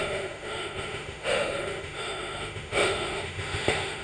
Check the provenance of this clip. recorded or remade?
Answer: remade